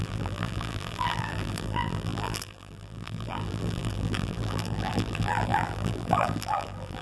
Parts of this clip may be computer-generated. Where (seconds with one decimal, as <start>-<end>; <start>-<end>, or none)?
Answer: 0.0-7.0